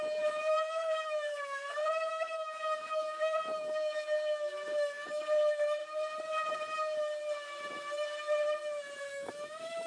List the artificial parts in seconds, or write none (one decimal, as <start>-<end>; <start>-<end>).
0.0-5.8; 9.0-9.9